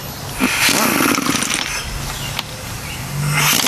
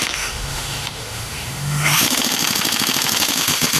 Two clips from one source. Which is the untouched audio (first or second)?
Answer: first